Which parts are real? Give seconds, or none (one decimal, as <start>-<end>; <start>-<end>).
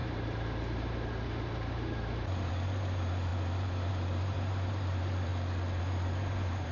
5.3-5.8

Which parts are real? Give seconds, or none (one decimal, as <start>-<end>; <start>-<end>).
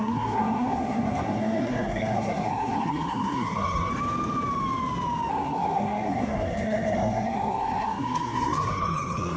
3.9-5.3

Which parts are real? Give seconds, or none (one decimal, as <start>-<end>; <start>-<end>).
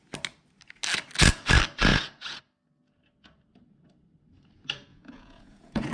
0.0-1.9; 2.4-4.9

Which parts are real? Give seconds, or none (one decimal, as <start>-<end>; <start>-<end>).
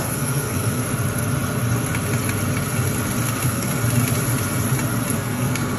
0.8-3.3; 3.8-5.1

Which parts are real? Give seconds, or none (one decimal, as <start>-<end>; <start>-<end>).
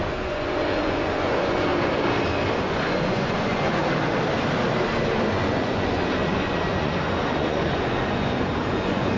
1.7-2.6; 3.8-5.3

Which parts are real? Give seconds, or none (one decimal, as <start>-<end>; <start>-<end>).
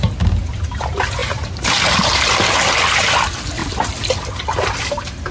0.0-5.3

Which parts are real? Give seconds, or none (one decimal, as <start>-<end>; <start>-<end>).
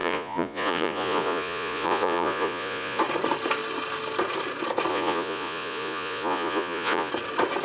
3.0-4.9; 7.1-7.6